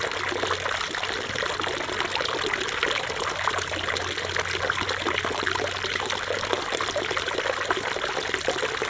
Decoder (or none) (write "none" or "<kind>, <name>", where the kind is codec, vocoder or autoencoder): none